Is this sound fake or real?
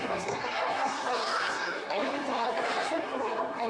fake